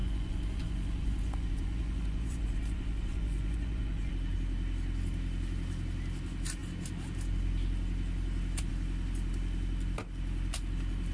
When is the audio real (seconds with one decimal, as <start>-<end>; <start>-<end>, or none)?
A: 4.1-11.1